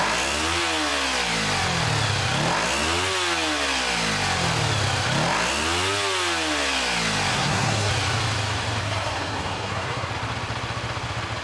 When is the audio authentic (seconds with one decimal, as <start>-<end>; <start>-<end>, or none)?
0.0-7.3; 7.9-8.8; 10.1-11.4